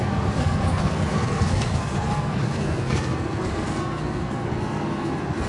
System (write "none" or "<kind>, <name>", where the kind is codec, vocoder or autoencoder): codec, SNAC